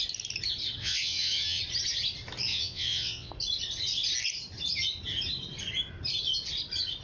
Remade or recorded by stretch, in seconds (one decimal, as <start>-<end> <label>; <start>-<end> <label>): 0.0-0.8 recorded; 0.8-1.6 remade; 1.6-2.5 recorded; 2.5-3.3 remade; 3.3-7.0 recorded